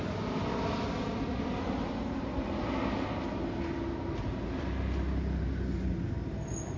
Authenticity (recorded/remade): recorded